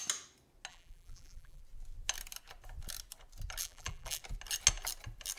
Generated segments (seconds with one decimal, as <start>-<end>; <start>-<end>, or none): 0.7-1.6; 3.6-4.2